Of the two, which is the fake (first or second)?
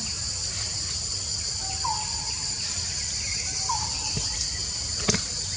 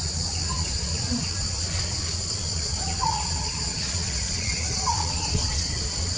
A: second